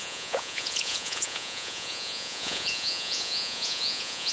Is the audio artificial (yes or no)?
yes